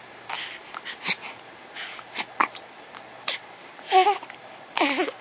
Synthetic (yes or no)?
no